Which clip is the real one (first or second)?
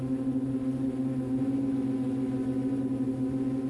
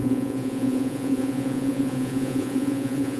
first